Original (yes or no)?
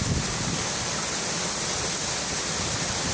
yes